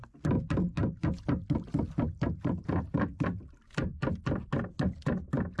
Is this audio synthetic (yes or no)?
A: no